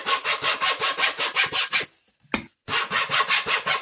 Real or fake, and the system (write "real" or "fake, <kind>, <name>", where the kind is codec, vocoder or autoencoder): real